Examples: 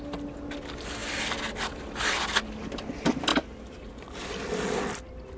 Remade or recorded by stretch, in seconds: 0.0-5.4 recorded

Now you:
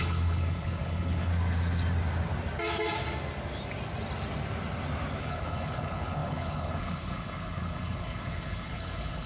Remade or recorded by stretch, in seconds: 0.0-1.3 remade; 1.3-5.2 recorded; 5.2-9.3 remade